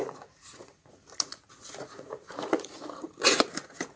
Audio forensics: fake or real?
fake